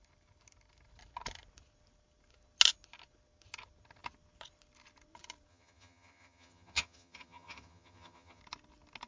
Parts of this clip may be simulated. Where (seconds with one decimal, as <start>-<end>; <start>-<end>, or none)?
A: 5.5-8.4